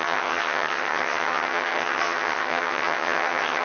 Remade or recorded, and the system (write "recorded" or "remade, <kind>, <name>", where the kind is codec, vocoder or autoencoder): remade, vocoder, HiFi-GAN